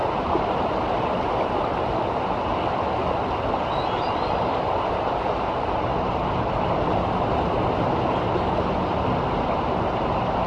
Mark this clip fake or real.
real